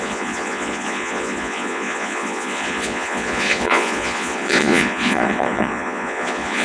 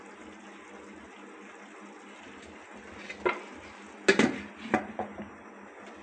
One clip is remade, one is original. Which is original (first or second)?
second